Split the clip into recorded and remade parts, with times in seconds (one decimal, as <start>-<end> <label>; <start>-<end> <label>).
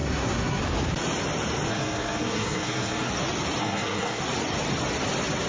0.0-0.6 remade; 0.6-1.7 recorded; 1.7-3.1 remade; 3.1-3.6 recorded; 3.6-4.2 remade; 4.2-5.5 recorded